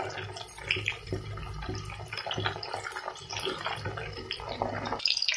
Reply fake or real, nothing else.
real